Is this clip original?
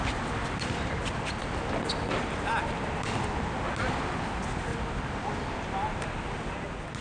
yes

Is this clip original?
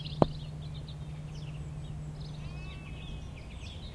yes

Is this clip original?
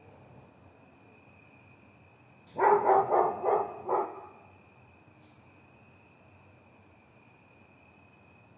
yes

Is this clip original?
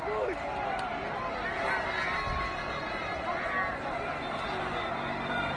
yes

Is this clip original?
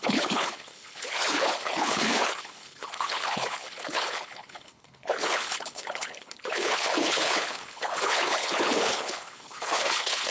no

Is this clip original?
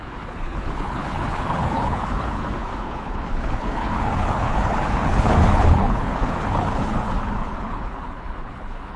no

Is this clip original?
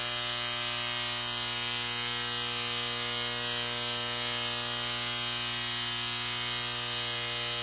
yes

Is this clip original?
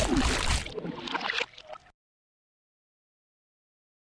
yes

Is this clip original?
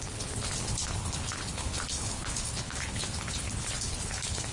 no